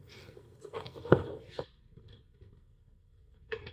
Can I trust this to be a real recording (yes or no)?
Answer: no